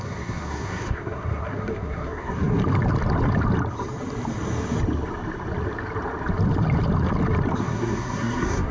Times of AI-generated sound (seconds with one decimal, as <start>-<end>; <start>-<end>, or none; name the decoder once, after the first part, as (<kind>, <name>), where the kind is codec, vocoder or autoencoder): 0.0-2.6 (codec, SNAC); 7.6-8.7